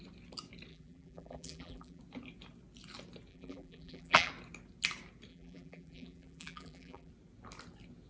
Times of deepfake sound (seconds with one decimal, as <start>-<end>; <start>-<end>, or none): 0.7-2.0; 3.3-4.3; 5.3-7.1